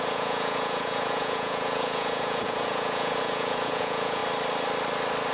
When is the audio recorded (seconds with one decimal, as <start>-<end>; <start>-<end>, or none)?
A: 4.2-5.3